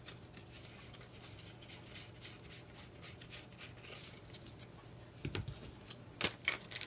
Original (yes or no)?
yes